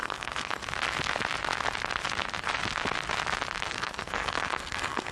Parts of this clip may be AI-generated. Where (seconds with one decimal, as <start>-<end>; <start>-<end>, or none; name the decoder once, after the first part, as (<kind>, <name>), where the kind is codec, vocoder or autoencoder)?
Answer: 0.0-0.6 (codec, SNAC); 3.7-5.1